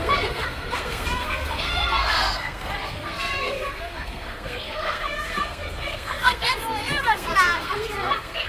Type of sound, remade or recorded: remade